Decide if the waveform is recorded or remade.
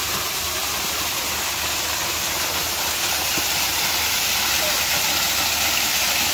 recorded